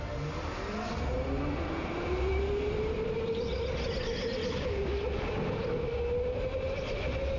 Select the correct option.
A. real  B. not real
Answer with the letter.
A